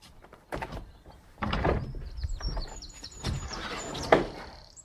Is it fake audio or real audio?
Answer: fake